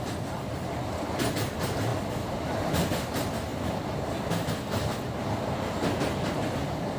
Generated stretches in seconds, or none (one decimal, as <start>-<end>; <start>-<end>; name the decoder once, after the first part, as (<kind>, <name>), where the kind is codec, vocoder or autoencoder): none